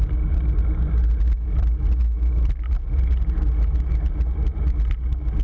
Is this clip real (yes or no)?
yes